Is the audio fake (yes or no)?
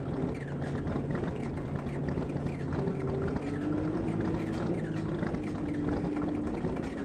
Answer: no